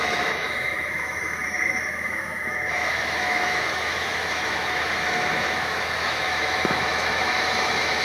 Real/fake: fake